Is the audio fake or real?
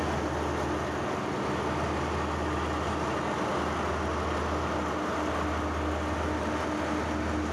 real